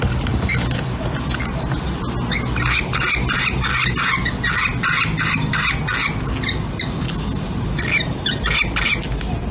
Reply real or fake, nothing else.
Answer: real